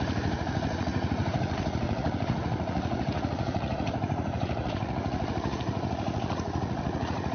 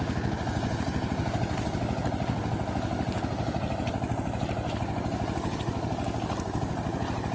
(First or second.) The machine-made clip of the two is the first